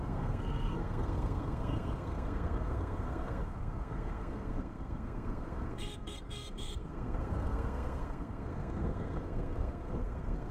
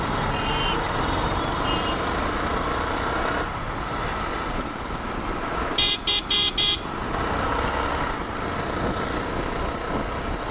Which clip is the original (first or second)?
second